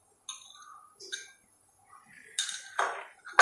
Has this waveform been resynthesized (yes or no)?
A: no